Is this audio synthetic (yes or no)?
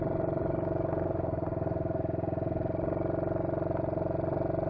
no